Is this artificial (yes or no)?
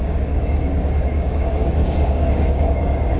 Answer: yes